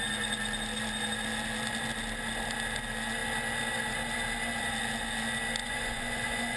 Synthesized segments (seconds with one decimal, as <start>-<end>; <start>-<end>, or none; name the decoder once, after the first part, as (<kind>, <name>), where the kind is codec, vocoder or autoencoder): 5.6-6.6 (vocoder, Vocos)